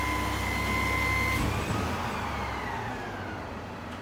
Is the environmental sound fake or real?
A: real